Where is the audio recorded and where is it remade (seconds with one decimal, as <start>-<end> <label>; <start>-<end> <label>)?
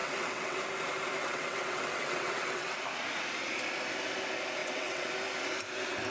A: 0.0-0.6 remade; 0.6-1.2 recorded; 1.2-2.7 remade; 2.7-4.6 recorded; 4.6-5.1 remade; 5.1-6.1 recorded